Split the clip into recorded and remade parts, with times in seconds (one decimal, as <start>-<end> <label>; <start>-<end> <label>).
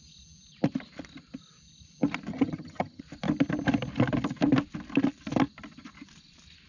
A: 0.0-2.3 recorded; 2.3-3.0 remade; 3.0-6.7 recorded